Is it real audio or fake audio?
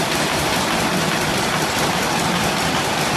fake